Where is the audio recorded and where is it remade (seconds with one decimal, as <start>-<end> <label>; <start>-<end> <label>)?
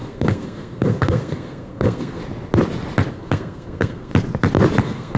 0.0-2.2 remade; 2.2-3.1 recorded; 3.1-4.1 remade; 4.1-4.8 recorded; 4.8-5.2 remade